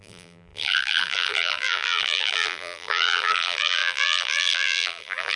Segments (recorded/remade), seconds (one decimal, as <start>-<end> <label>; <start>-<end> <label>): 0.0-5.4 remade